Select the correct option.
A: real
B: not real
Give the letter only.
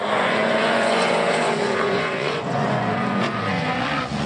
B